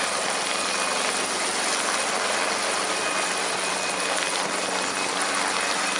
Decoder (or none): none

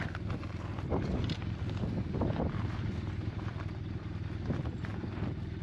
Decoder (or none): none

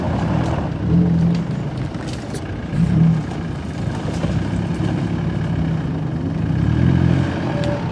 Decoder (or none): none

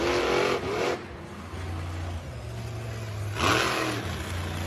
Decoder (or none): none